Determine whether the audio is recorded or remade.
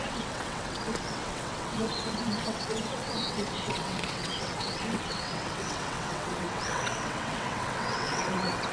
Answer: remade